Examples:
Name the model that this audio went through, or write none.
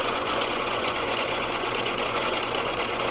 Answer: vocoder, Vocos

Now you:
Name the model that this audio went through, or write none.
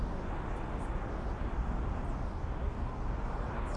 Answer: none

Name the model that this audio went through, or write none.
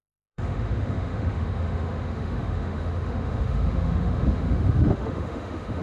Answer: autoencoder, DAC-VAE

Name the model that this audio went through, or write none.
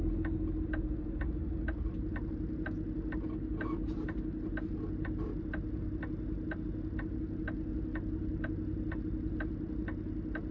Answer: none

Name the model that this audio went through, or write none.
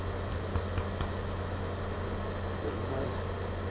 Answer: none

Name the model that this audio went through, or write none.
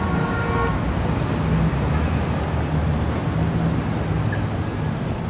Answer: none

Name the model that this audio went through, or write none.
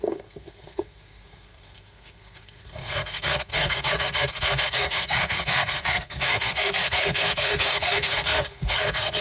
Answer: codec, SNAC